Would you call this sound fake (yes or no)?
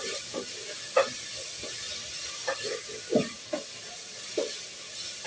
no